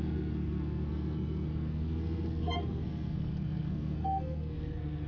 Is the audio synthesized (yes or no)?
yes